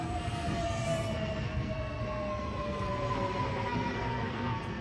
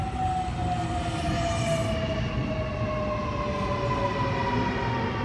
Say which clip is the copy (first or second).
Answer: first